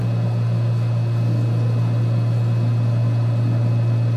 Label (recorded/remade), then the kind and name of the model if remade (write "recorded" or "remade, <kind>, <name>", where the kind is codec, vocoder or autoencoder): recorded